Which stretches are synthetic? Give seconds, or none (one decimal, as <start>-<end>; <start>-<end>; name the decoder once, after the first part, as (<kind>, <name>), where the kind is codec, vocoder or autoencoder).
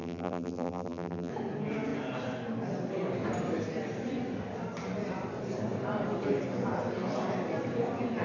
0.0-1.3 (vocoder, BigVGAN v2)